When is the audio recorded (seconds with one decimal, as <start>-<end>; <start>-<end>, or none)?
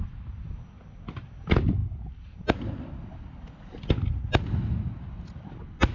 0.0-5.9